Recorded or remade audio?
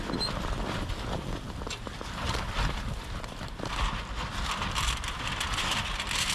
recorded